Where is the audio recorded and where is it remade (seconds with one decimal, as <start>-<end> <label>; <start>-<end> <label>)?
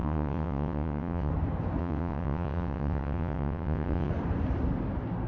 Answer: 0.0-1.3 remade; 1.3-1.8 recorded; 1.8-4.1 remade; 4.1-5.3 recorded